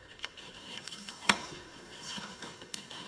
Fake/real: fake